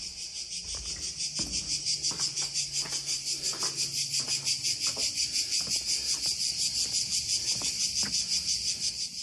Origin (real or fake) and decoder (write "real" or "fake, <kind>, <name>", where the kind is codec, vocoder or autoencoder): real